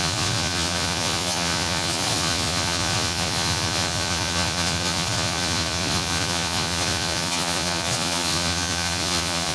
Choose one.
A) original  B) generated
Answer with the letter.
B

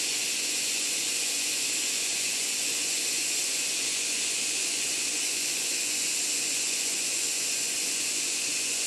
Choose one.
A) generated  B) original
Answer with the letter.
A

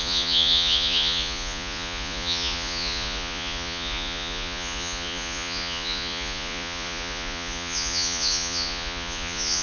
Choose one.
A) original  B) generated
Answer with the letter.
B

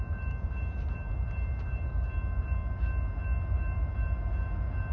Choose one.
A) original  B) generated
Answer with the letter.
A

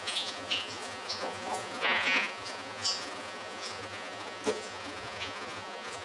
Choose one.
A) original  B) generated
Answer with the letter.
B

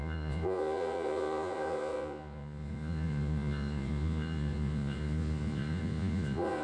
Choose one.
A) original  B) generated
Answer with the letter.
B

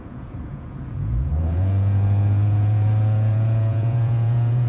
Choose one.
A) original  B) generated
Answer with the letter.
B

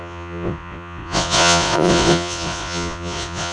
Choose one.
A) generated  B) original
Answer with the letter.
A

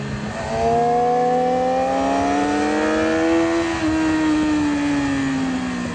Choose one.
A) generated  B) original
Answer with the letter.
B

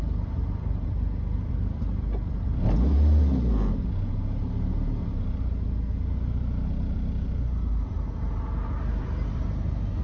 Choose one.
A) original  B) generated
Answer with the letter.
A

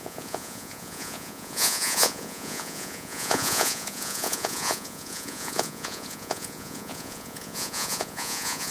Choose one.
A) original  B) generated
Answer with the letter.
B